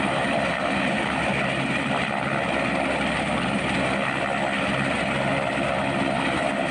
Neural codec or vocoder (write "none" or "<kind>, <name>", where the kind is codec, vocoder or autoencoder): none